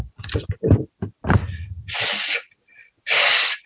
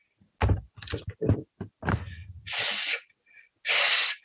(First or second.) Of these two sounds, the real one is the second